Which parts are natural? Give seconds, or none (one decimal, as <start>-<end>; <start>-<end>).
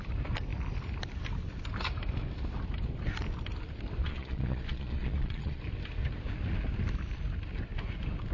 0.0-4.0; 5.6-8.3